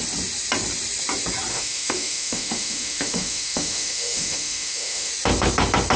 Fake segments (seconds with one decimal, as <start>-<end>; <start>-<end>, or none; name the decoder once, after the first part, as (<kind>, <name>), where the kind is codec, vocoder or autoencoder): 1.5-5.1 (autoencoder, DAC-VAE)